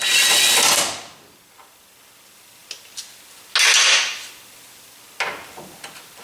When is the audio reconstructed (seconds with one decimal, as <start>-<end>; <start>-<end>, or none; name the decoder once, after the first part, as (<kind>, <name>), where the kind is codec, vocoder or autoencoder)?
none